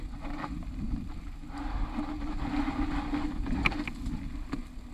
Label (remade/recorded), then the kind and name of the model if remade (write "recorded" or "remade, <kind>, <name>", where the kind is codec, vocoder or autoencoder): recorded